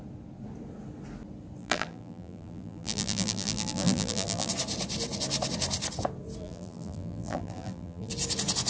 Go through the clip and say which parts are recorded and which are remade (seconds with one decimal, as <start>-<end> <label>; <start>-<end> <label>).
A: 0.0-1.6 recorded; 1.6-4.5 remade; 4.5-6.4 recorded; 6.4-8.1 remade; 8.1-8.7 recorded